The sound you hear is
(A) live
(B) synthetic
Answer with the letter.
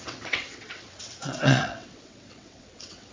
B